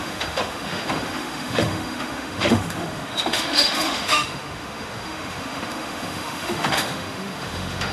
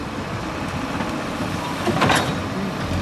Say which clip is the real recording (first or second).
second